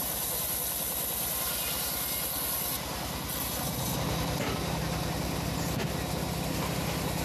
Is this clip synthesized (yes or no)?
no